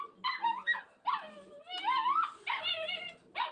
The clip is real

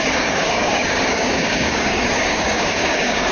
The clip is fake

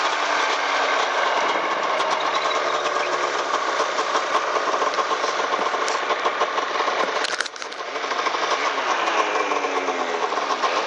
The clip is real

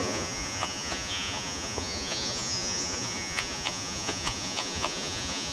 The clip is fake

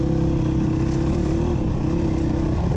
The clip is real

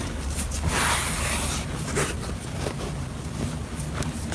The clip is real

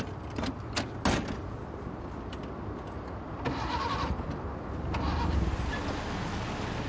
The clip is real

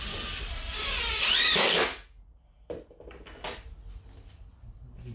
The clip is real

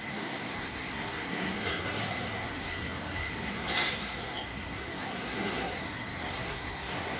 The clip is fake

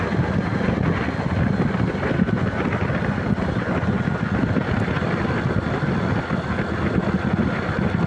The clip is real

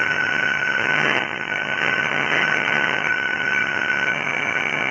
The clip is fake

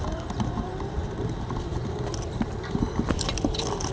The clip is real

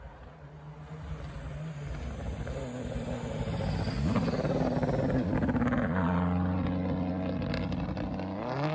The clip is real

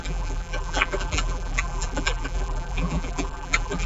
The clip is fake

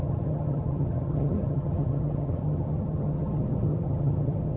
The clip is fake